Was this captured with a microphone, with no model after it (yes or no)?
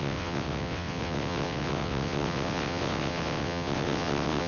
no